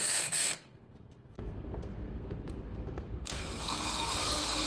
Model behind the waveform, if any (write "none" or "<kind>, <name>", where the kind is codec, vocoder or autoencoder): codec, SNAC